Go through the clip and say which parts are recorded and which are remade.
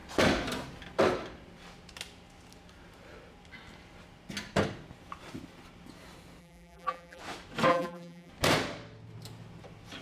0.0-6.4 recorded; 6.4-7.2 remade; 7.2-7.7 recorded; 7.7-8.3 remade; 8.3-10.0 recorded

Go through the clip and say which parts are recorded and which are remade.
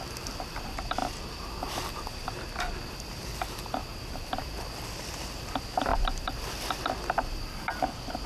0.0-3.9 recorded; 3.9-5.3 remade; 5.3-5.9 recorded; 5.9-6.7 remade; 6.7-8.3 recorded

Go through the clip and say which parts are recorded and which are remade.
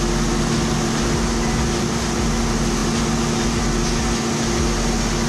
0.0-5.3 recorded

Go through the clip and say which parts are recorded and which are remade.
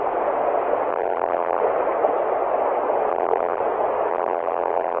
0.0-0.9 recorded; 0.9-1.6 remade; 1.6-3.1 recorded; 3.1-3.6 remade; 3.6-4.1 recorded; 4.1-5.0 remade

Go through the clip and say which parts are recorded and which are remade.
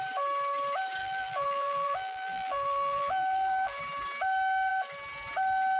0.0-1.0 recorded; 1.0-3.8 remade; 3.8-5.8 recorded